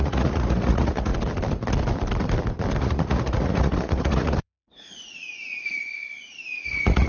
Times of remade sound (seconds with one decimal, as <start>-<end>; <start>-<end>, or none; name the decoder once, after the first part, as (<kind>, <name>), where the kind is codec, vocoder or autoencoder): 0.0-1.1 (vocoder, Vocos); 2.8-7.1